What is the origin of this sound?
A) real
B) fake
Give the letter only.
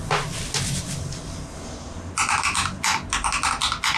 A